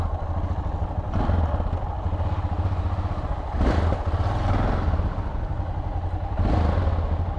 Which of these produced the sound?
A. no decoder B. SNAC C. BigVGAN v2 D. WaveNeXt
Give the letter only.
A